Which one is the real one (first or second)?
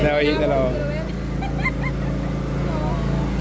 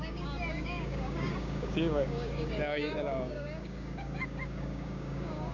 first